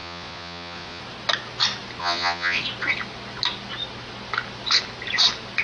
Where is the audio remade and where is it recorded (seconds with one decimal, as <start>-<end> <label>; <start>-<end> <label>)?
0.0-1.0 remade; 1.0-2.0 recorded; 2.0-2.6 remade; 2.6-5.6 recorded